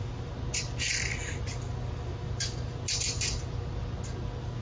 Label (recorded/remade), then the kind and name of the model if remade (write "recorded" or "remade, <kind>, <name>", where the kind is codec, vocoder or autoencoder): recorded